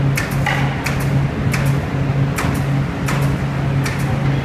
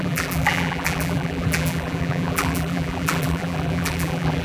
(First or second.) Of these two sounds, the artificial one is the second